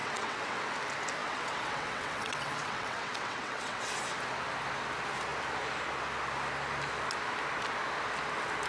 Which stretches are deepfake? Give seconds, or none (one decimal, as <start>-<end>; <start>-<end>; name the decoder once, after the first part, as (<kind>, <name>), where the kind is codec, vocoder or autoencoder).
0.0-0.6 (vocoder, WaveNeXt); 1.2-3.9